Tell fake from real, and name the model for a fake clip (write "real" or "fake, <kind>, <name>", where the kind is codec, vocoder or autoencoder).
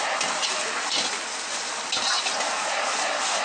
real